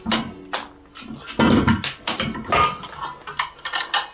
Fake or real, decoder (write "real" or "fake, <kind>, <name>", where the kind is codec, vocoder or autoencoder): real